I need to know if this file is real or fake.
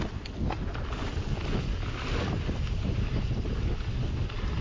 real